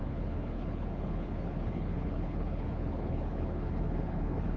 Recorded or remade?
remade